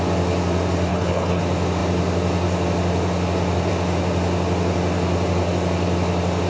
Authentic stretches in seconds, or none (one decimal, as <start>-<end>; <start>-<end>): 0.0-0.9; 1.4-6.5